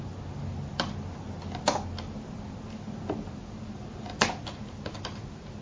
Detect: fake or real real